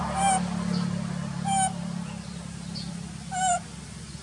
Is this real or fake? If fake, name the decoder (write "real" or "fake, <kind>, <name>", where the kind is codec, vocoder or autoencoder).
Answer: real